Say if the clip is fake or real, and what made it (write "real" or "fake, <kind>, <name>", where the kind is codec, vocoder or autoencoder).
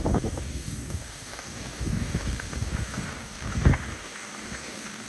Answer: fake, codec, DAC